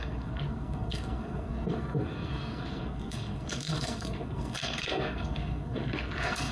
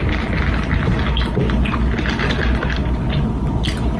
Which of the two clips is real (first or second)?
second